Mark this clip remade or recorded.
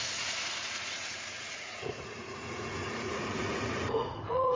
remade